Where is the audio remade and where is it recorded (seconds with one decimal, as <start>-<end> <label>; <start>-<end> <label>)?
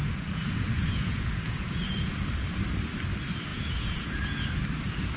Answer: 0.0-2.3 remade; 2.3-3.5 recorded; 3.5-4.4 remade; 4.4-5.2 recorded